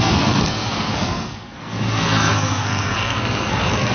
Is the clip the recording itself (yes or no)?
no